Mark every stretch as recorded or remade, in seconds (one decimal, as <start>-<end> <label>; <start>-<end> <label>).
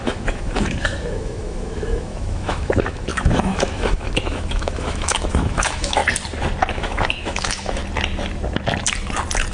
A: 0.0-6.0 remade; 6.0-6.7 recorded; 6.7-7.8 remade; 7.8-9.5 recorded